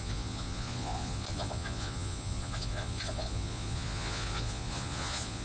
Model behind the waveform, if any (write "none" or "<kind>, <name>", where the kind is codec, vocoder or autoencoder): vocoder, Vocos